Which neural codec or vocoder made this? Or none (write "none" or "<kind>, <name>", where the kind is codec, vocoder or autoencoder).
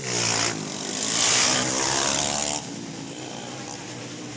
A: none